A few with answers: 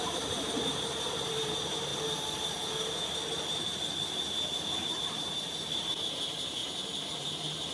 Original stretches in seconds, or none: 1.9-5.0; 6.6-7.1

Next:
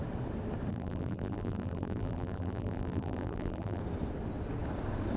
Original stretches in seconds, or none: 0.0-0.7; 3.8-5.2

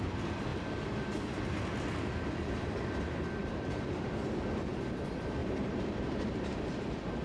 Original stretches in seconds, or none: 0.0-3.4; 4.1-5.4; 6.7-7.2

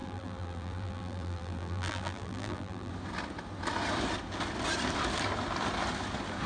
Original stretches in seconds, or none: 2.9-6.5